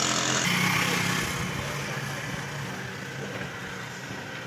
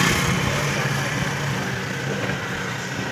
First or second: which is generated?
second